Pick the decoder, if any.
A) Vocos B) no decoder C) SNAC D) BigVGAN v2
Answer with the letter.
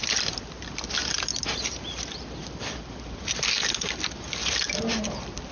B